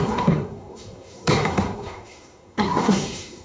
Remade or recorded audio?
remade